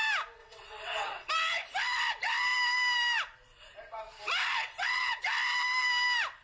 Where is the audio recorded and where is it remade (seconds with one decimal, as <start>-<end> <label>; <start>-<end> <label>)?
0.0-0.4 recorded; 0.4-1.3 remade; 1.3-4.6 recorded; 4.6-5.2 remade; 5.2-6.4 recorded